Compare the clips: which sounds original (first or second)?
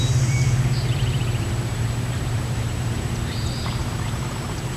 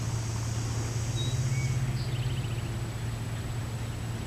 second